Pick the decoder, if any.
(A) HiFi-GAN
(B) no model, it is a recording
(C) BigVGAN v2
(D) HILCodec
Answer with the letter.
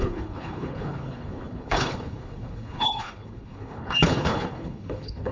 D